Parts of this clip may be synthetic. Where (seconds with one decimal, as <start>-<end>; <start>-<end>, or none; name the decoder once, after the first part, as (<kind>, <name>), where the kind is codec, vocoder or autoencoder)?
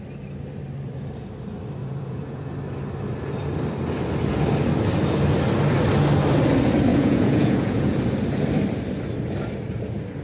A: 1.8-2.5 (vocoder, Vocos); 6.9-8.0